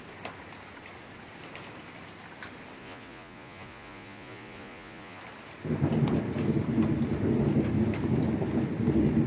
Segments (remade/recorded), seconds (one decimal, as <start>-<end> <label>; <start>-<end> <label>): 0.0-2.8 recorded; 2.8-5.2 remade; 5.2-9.3 recorded